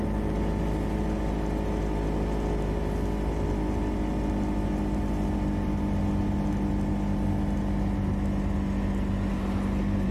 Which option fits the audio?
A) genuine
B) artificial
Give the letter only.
A